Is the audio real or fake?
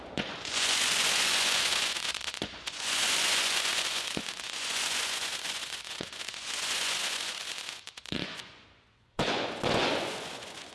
fake